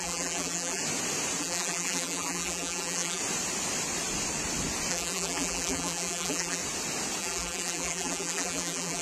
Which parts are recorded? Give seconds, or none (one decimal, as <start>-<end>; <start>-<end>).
0.8-1.4; 3.2-4.9; 6.6-7.2